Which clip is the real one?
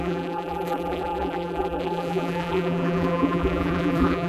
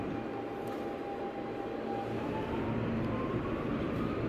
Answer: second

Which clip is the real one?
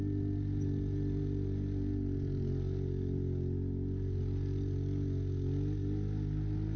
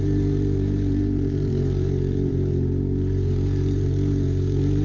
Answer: first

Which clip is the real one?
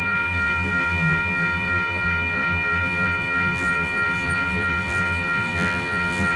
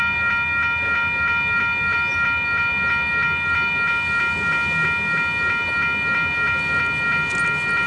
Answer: second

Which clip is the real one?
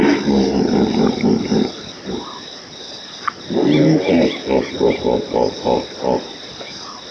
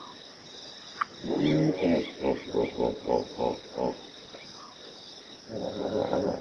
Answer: second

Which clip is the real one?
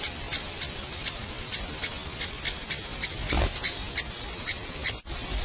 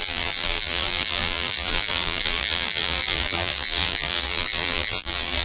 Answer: first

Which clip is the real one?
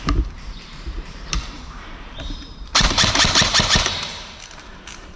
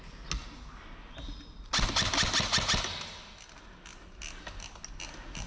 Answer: second